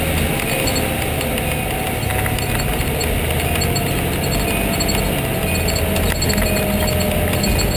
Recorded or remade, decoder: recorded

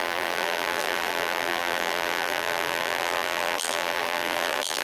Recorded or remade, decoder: remade, vocoder, BigVGAN v2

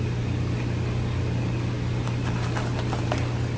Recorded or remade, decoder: recorded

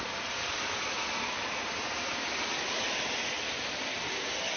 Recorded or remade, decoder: recorded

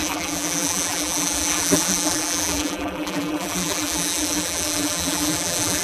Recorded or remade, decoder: remade, vocoder, BigVGAN v2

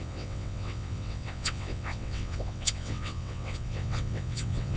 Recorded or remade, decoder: remade, vocoder, WaveNeXt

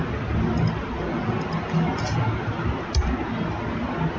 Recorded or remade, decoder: recorded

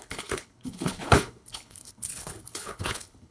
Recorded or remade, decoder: remade, codec, HILCodec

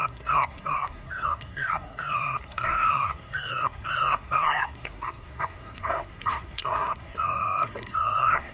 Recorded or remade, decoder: remade, codec, SNAC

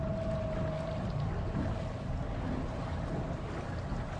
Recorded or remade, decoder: recorded